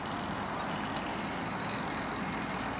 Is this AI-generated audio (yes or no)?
no